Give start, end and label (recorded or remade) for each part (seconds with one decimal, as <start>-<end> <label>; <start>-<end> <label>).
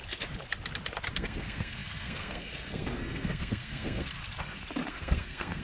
0.0-1.1 recorded; 1.1-4.2 remade; 4.2-4.9 recorded; 4.9-5.6 remade